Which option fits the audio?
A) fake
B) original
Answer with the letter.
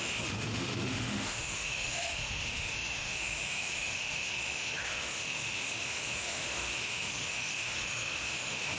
A